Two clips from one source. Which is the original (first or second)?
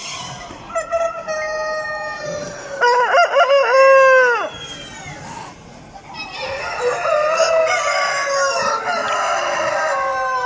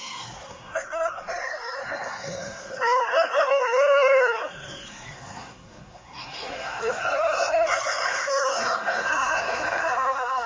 first